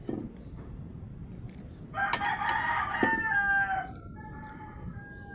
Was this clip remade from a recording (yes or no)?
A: no